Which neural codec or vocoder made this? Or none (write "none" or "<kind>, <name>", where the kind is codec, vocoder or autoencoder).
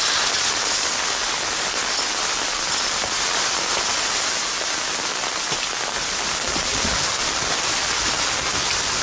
none